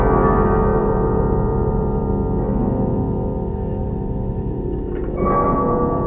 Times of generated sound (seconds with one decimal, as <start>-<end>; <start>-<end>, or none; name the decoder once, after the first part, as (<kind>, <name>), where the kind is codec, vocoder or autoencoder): 0.7-2.1 (vocoder, BigVGAN v2); 3.8-6.1